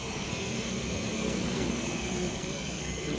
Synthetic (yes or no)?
yes